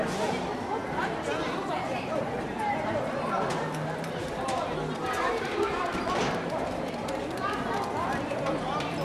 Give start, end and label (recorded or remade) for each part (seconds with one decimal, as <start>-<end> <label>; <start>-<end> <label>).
0.0-5.0 recorded; 5.0-6.2 remade; 6.2-9.0 recorded